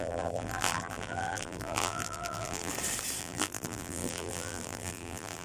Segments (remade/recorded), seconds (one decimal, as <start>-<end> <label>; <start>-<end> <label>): 0.0-2.7 remade; 2.7-3.2 recorded; 3.2-5.4 remade